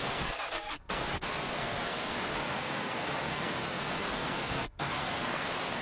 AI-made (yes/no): yes